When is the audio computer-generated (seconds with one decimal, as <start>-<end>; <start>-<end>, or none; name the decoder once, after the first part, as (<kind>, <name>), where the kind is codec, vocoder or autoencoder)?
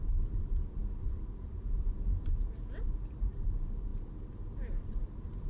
0.0-3.9 (vocoder, BigVGAN v2); 4.7-5.5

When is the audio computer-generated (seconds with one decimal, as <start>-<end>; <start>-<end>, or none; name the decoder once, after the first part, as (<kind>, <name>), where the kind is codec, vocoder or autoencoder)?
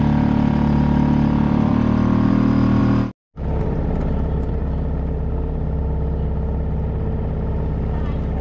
0.0-1.7 (vocoder, BigVGAN v2); 2.3-2.8; 3.6-4.6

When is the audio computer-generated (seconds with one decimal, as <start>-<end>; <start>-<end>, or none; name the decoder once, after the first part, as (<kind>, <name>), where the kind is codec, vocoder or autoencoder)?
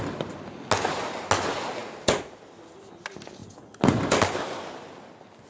none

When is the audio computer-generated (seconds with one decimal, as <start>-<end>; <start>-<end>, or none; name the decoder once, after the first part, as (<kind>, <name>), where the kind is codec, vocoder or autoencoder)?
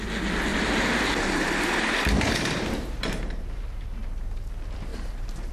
0.5-3.8 (vocoder, BigVGAN v2); 4.9-5.5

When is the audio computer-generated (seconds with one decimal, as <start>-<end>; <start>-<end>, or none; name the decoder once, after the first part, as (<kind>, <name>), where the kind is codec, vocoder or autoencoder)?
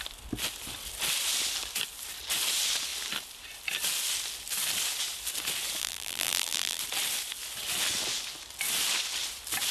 5.8-6.8 (vocoder, BigVGAN v2)